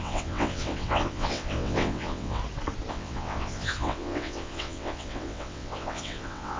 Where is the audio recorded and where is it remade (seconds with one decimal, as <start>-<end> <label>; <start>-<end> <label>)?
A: 0.0-2.4 remade; 2.4-2.9 recorded; 2.9-6.6 remade

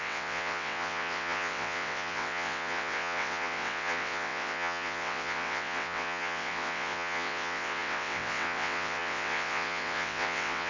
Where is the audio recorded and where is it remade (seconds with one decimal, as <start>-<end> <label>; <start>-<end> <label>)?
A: 0.0-10.7 remade

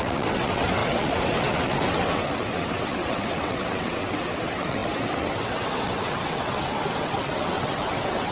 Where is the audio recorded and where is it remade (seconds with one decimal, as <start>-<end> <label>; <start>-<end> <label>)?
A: 0.0-8.3 remade

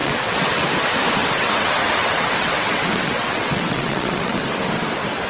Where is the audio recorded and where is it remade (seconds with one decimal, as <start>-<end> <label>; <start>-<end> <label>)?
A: 0.0-0.6 remade; 0.6-1.2 recorded; 1.2-4.4 remade; 4.4-5.3 recorded

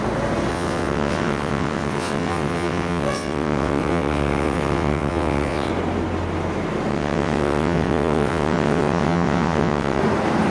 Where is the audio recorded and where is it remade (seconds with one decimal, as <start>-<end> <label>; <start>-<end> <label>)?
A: 0.0-0.5 recorded; 0.5-5.7 remade; 5.7-6.9 recorded; 6.9-10.0 remade; 10.0-10.5 recorded

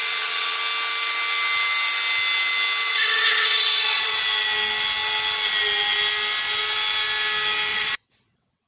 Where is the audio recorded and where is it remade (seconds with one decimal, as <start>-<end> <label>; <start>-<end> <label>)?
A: 0.0-0.6 remade; 0.6-2.9 recorded; 2.9-4.2 remade; 4.2-7.7 recorded; 7.7-8.7 remade

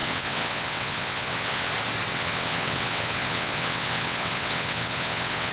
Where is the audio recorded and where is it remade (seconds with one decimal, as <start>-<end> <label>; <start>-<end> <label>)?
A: 0.0-1.7 remade; 1.7-2.1 recorded; 2.1-5.5 remade